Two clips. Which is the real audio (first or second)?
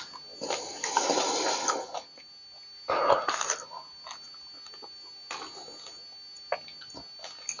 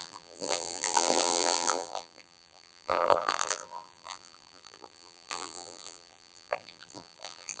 first